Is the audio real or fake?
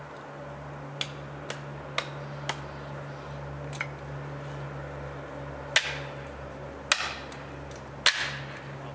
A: real